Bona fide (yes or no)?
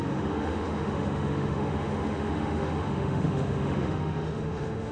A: no